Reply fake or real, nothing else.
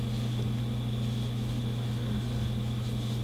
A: real